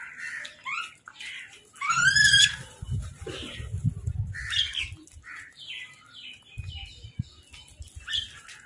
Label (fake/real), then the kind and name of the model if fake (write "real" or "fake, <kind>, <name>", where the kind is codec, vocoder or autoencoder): real